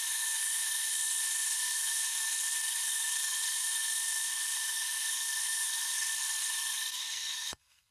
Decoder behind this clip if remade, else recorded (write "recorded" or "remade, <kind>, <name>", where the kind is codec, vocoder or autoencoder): remade, codec, SNAC